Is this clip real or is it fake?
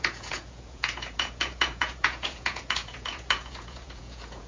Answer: fake